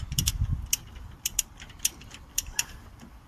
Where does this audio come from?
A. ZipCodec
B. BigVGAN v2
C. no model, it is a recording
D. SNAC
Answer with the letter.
B